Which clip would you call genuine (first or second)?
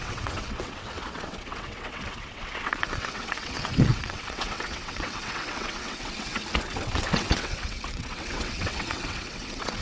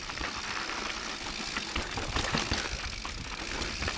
second